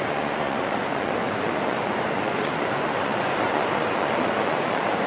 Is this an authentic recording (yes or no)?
no